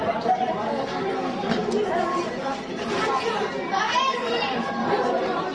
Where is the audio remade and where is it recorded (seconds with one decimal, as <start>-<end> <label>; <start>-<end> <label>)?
0.0-1.6 remade; 1.6-4.0 recorded; 4.0-5.5 remade